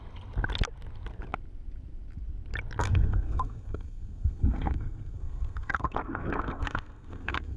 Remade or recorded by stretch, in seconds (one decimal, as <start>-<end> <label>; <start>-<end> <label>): 0.0-2.8 recorded; 2.8-7.6 remade